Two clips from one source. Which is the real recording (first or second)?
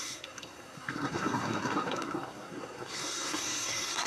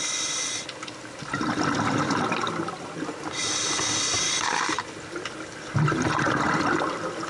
second